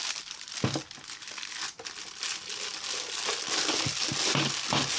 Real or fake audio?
real